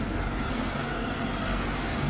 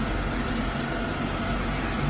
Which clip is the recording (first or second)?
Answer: second